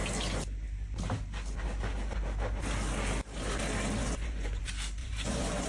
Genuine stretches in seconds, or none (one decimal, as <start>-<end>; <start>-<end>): 0.0-4.0; 4.6-5.0